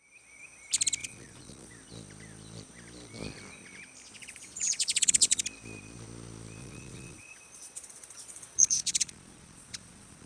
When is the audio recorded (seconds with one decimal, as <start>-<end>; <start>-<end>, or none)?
0.0-1.0; 1.7-4.2; 5.4-6.6